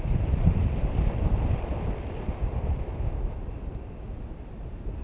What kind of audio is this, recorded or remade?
recorded